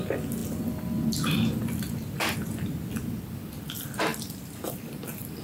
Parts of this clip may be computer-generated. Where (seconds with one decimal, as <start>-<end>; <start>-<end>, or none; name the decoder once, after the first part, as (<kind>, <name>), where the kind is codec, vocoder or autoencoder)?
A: none